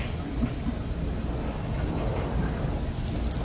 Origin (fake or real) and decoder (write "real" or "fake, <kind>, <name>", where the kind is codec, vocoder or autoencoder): real